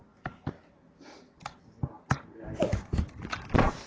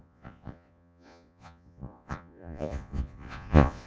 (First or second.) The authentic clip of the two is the first